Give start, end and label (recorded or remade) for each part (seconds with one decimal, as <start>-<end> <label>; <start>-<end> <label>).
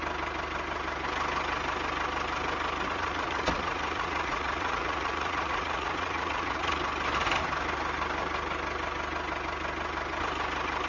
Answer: 0.0-2.9 recorded; 2.9-6.8 remade; 6.8-10.9 recorded